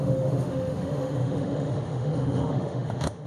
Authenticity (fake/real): fake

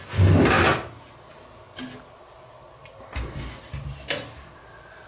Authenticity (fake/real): real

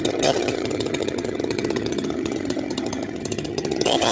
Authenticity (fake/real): fake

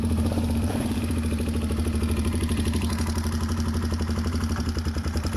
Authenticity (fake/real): fake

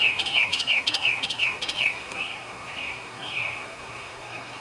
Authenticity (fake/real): fake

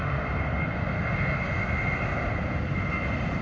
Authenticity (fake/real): real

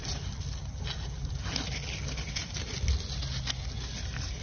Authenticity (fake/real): real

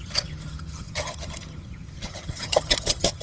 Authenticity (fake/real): fake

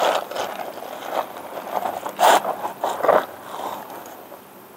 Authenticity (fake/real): real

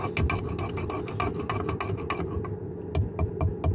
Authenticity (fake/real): real